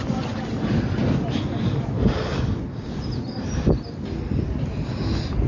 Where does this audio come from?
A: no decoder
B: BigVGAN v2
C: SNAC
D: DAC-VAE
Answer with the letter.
A